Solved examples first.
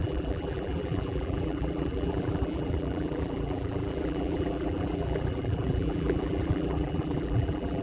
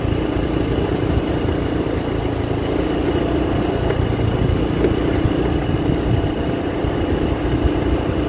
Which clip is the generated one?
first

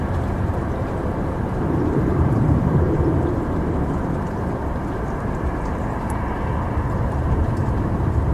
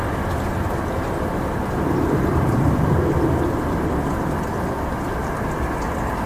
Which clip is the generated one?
first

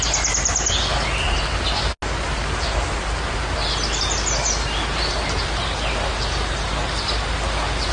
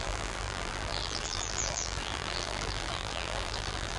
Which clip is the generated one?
second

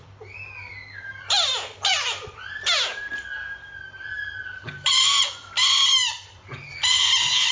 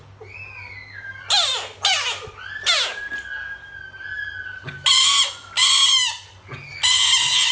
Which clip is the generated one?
first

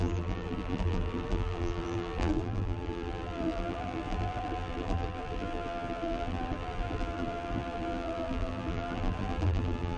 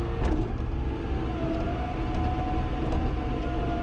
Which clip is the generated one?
first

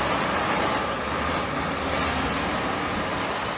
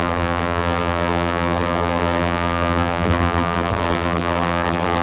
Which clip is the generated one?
second